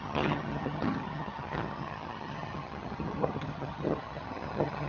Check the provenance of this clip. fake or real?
fake